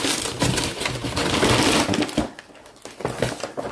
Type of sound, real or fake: real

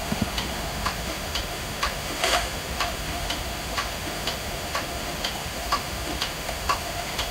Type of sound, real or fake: fake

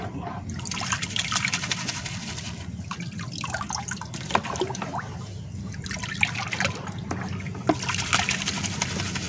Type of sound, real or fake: real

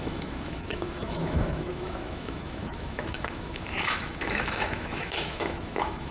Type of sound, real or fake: fake